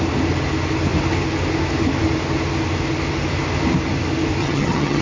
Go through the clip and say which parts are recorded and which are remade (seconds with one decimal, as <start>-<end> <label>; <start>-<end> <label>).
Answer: 0.0-4.4 recorded; 4.4-5.0 remade